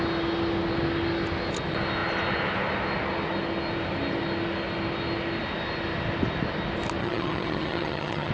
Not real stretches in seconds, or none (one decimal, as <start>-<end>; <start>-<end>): 7.0-8.3